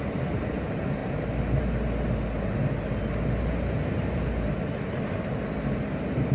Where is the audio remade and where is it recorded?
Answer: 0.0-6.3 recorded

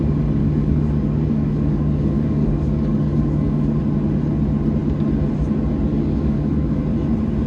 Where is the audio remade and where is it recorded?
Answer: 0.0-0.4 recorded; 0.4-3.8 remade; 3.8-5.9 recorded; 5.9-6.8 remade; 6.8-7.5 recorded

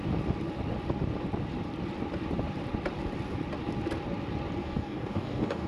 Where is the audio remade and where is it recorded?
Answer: 0.0-4.6 recorded; 4.6-5.7 remade